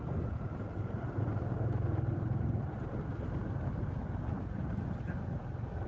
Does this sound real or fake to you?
fake